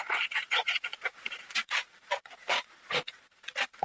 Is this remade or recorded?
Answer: remade